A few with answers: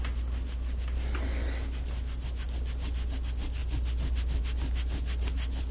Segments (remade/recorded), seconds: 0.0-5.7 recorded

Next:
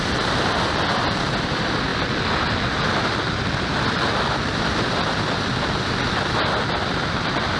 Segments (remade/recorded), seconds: 0.0-0.9 remade; 0.9-1.5 recorded; 1.5-1.9 remade; 1.9-2.9 recorded; 2.9-7.6 remade

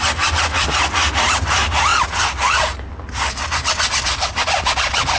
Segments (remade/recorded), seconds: 0.0-5.2 recorded

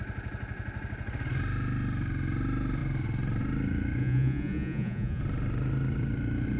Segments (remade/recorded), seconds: 0.0-4.0 recorded; 4.0-5.2 remade; 5.2-6.6 recorded

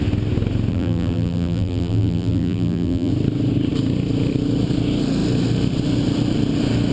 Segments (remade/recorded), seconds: 0.0-0.7 recorded; 0.7-3.1 remade; 3.1-6.9 recorded

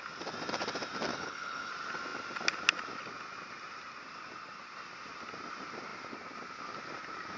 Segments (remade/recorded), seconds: 0.0-1.1 recorded; 1.1-1.7 remade; 1.7-7.4 recorded

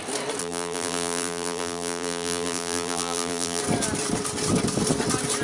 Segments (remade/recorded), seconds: 0.0-0.4 recorded; 0.4-3.6 remade; 3.6-5.4 recorded

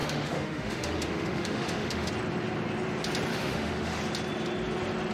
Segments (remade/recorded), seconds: 0.0-2.1 remade; 2.1-3.3 recorded; 3.3-4.0 remade; 4.0-5.1 recorded